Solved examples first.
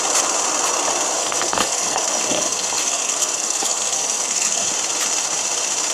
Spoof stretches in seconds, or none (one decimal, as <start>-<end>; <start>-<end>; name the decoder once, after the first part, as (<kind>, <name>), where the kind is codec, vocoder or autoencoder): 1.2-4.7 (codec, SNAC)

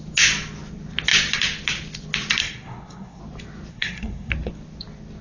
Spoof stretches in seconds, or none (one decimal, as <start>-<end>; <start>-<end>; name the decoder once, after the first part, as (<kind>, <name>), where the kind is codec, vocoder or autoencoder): 2.4-3.2 (codec, SNAC); 3.7-4.3

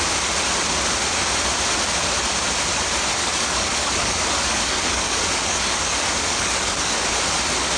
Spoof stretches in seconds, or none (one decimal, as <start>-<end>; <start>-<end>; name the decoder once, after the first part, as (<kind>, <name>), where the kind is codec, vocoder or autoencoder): 3.2-7.1 (codec, DAC)

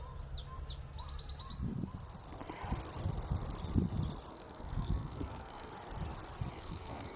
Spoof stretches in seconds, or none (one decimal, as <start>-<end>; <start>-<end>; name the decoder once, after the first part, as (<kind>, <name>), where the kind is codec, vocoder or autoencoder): 4.3-5.7 (codec, SNAC); 6.5-7.2

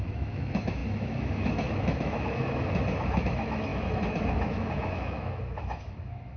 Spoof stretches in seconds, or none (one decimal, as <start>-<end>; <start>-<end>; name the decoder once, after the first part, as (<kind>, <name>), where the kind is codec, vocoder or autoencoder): 0.0-6.4 (autoencoder, DAC-VAE)